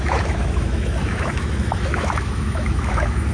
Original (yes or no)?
no